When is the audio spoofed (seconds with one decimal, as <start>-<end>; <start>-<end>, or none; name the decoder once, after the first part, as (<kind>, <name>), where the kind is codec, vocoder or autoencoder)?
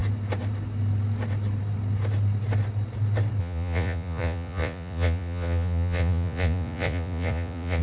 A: 3.4-7.8 (vocoder, Vocos)